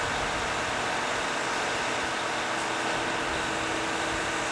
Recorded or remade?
recorded